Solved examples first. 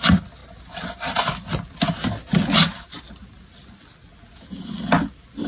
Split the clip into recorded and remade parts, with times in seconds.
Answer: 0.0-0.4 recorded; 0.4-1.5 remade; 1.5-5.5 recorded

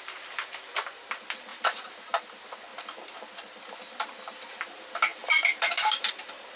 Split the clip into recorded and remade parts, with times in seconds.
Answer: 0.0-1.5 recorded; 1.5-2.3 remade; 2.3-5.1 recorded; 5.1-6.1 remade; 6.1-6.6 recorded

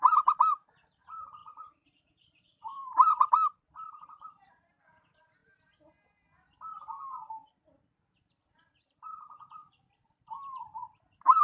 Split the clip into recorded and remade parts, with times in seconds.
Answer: 0.0-5.4 remade; 5.4-8.3 recorded; 8.3-11.4 remade

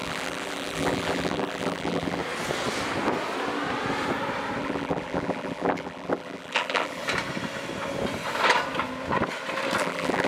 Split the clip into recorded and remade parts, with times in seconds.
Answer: 0.0-2.2 remade; 2.2-4.6 recorded; 4.6-7.0 remade; 7.0-9.8 recorded; 9.8-10.3 remade

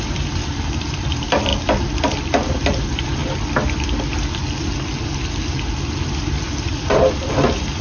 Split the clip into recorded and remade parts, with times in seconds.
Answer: 0.0-1.5 remade; 1.5-2.5 recorded; 2.5-3.2 remade; 3.2-6.2 recorded; 6.2-7.8 remade

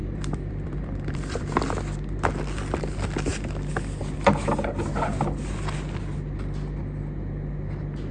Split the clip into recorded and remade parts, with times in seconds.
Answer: 0.0-1.4 remade; 1.4-8.1 recorded

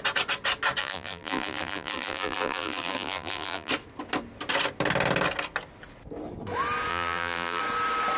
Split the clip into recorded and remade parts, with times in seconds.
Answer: 0.0-0.8 recorded; 0.8-3.7 remade; 3.7-6.9 recorded; 6.9-7.6 remade; 7.6-8.2 recorded